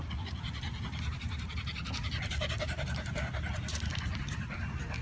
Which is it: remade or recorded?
remade